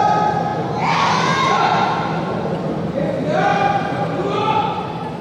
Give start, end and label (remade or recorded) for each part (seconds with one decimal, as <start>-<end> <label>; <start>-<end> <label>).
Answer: 0.0-3.5 recorded; 3.5-5.2 remade